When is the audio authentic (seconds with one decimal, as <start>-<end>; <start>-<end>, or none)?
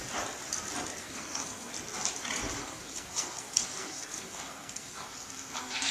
0.0-1.0; 1.7-2.6